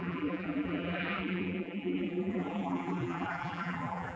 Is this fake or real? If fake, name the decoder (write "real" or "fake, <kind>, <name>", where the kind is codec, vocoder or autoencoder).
fake, vocoder, BigVGAN v2